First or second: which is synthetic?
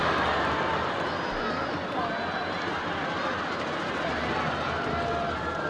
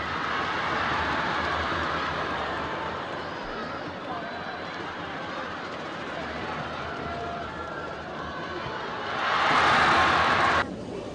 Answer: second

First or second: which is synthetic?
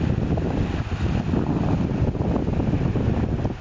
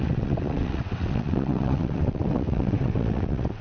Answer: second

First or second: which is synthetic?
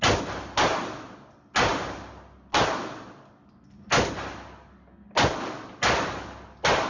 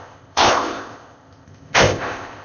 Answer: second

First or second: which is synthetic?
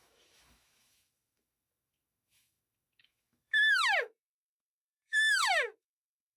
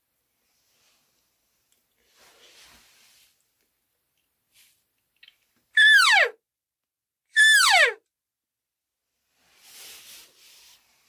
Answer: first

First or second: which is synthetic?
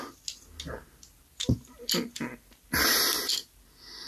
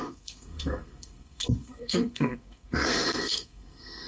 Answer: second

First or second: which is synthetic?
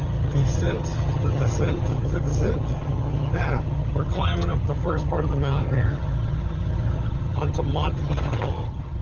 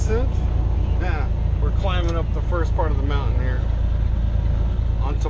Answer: first